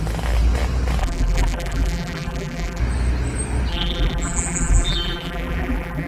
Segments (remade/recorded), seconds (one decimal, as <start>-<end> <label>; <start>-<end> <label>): 0.0-1.0 recorded; 1.0-2.8 remade; 2.8-3.7 recorded; 3.7-6.1 remade